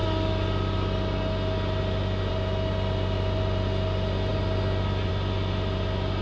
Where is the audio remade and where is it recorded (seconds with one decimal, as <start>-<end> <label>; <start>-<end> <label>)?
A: 0.0-6.2 recorded